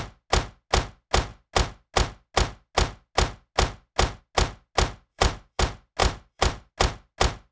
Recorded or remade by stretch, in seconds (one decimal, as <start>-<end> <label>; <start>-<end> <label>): 0.0-5.1 recorded; 5.1-5.6 remade; 5.6-6.0 recorded; 6.0-6.7 remade; 6.7-7.5 recorded